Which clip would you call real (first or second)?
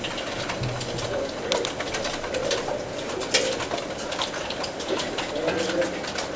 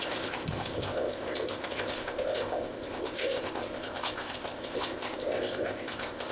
first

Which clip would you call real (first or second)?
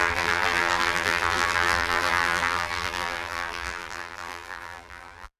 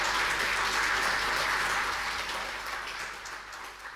second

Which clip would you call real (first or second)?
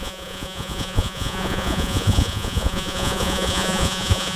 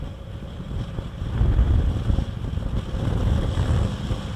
second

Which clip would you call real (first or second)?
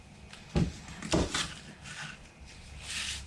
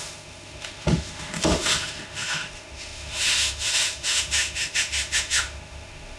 first